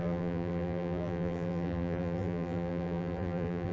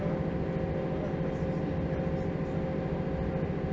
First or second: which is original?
second